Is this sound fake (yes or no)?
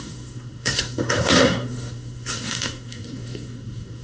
yes